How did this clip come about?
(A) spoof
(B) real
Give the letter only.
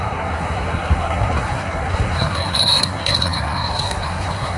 A